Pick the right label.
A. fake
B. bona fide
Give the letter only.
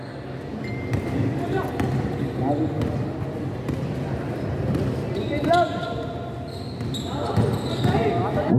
B